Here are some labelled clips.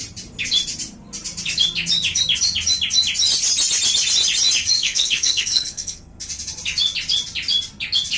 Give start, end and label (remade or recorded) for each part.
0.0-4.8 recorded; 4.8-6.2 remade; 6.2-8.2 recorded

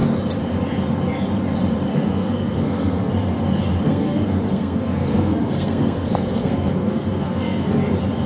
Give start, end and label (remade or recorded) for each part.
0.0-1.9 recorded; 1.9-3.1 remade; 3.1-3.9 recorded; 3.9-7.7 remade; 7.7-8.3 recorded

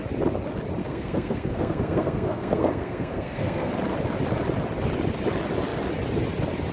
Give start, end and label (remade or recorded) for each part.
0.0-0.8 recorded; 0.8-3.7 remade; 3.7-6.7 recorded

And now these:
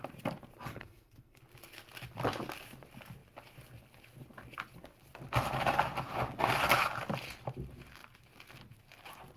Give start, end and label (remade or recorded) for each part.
0.0-0.7 recorded; 0.7-1.4 remade; 1.4-9.4 recorded

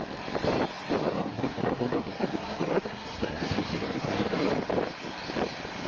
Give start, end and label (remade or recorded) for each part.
0.0-1.0 recorded; 1.0-4.5 remade; 4.5-5.9 recorded